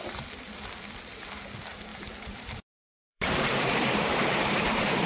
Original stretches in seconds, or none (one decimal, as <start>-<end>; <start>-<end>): 0.0-1.9